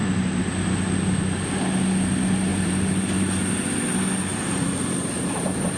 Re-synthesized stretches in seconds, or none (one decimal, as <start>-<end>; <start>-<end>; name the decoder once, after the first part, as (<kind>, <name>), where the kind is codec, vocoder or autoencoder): 0.0-0.5 (vocoder, BigVGAN v2); 2.5-3.5; 4.3-5.8